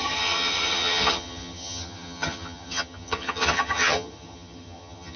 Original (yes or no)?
no